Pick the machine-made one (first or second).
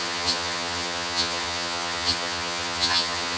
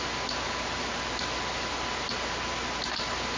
first